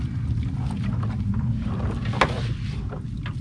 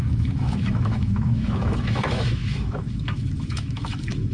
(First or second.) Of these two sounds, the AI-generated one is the second